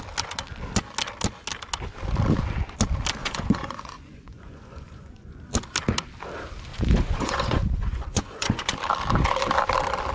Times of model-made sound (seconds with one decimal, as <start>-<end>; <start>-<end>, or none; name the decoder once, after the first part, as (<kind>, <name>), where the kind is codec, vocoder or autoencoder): 3.2-5.4 (vocoder, Vocos); 6.7-8.7